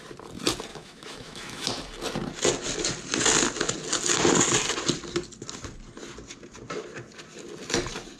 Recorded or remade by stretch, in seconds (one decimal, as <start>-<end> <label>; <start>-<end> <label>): 0.0-0.7 recorded; 0.7-1.7 remade; 1.7-8.2 recorded